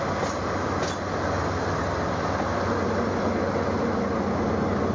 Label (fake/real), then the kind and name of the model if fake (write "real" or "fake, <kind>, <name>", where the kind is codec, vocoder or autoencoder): real